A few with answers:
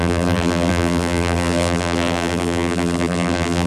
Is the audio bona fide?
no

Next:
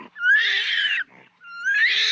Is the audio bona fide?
no